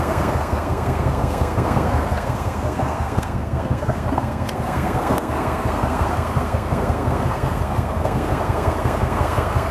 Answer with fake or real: fake